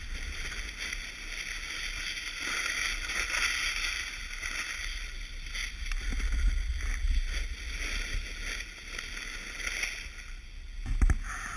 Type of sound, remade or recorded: recorded